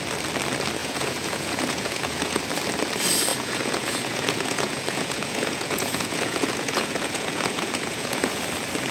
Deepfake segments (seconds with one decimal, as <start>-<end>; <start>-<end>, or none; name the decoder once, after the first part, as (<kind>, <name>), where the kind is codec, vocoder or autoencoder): 0.8-2.4 (vocoder, Vocos); 3.3-8.4